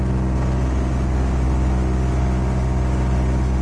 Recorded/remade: recorded